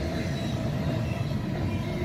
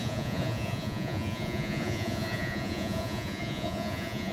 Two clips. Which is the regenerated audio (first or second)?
second